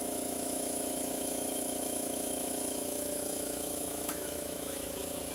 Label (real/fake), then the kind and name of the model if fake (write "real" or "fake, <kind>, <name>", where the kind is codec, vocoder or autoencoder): fake, autoencoder, DAC-VAE